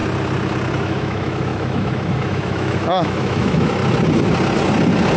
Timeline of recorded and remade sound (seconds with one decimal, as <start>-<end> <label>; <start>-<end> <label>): 0.0-0.8 recorded; 0.8-3.8 remade; 3.8-5.2 recorded